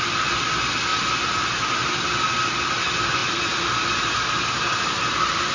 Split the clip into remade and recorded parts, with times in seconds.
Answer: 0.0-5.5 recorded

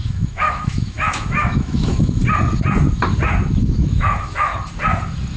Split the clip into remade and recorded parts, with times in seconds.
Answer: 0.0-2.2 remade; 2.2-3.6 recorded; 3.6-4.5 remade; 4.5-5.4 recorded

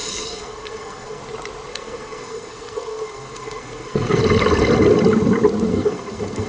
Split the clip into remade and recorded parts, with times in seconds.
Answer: 0.0-1.2 remade; 1.2-1.7 recorded; 1.7-4.2 remade; 4.2-5.7 recorded; 5.7-6.5 remade